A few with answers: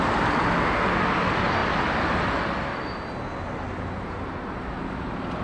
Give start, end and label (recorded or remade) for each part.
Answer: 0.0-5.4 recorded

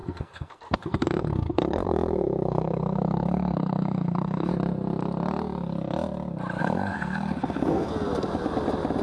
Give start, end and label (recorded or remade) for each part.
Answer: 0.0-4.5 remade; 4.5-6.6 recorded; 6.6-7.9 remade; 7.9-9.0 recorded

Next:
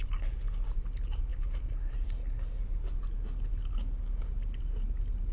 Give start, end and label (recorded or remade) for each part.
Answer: 0.0-1.3 recorded; 1.3-1.9 remade; 1.9-5.3 recorded

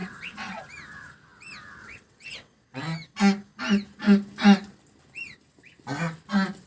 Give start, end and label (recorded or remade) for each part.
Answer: 0.0-0.6 remade; 0.6-1.8 recorded; 1.8-2.8 remade; 2.8-6.7 recorded